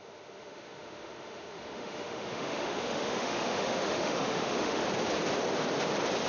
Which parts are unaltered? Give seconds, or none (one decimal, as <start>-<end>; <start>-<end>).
4.8-6.3